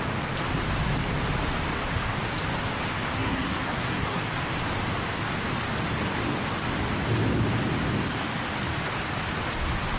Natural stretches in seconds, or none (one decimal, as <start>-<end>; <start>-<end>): 0.0-3.1; 4.2-10.0